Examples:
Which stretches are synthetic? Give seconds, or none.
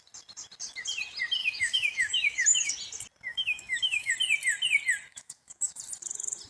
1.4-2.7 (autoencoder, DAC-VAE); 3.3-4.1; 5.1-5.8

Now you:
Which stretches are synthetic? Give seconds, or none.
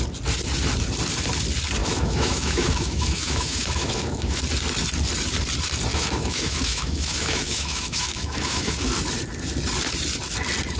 1.8-4.4 (autoencoder, DAC-VAE); 5.9-8.9